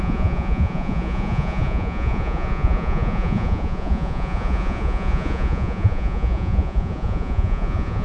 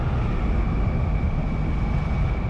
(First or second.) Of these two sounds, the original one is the second